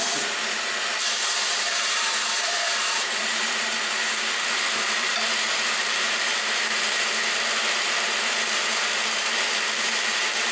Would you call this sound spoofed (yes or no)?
yes